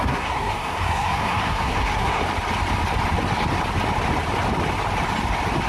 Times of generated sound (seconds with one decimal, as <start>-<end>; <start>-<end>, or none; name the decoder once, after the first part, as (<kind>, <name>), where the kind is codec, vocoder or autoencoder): 0.0-2.2 (codec, SNAC)